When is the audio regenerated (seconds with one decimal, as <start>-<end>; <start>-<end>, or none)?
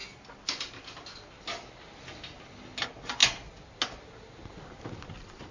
none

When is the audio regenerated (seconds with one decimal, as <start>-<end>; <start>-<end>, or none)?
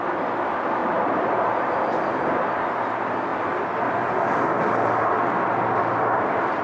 none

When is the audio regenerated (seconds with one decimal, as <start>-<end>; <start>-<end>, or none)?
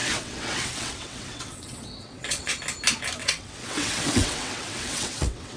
0.0-2.5; 3.2-5.6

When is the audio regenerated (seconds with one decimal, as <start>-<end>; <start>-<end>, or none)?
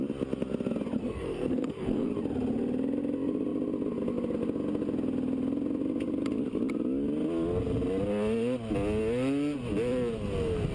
1.0-2.1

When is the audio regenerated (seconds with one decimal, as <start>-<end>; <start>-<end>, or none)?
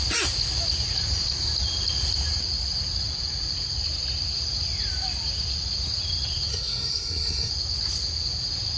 6.5-7.5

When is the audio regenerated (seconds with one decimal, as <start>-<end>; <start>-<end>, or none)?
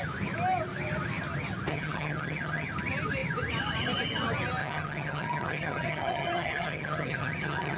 1.7-2.7; 4.6-7.8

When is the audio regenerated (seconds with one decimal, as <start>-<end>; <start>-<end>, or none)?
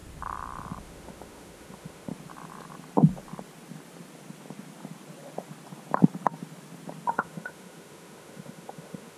0.8-2.1; 7.1-9.2